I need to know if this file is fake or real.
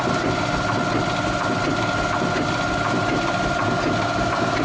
real